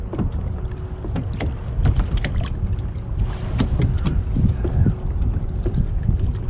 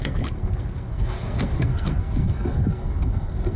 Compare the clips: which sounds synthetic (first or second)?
second